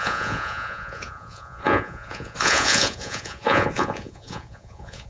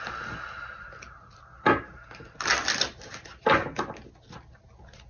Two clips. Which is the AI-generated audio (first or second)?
first